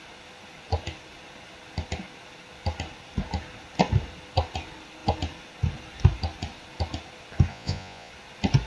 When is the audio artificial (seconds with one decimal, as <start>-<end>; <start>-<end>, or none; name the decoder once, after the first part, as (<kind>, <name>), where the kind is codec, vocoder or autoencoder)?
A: 7.5-8.1 (vocoder, Vocos)